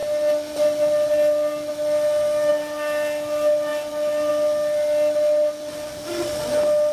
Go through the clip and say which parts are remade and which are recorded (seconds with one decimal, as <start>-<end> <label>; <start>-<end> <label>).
0.0-6.9 recorded